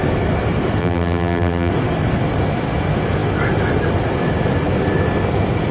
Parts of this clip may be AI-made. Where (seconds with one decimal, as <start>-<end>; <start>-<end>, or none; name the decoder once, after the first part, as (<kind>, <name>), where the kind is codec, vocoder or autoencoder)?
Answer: 0.8-1.7 (vocoder, BigVGAN v2)